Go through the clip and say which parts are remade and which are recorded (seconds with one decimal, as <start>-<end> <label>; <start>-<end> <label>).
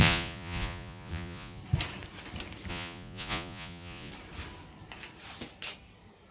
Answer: 0.0-1.6 remade; 1.6-2.7 recorded; 2.7-4.1 remade; 4.1-6.3 recorded